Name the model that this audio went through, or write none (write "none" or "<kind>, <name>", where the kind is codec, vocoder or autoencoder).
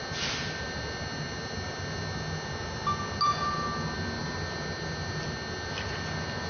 none